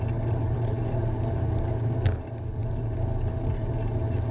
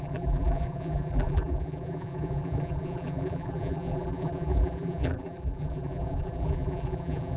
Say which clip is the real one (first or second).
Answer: first